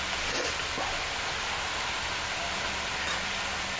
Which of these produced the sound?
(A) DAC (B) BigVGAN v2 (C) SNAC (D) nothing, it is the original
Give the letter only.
D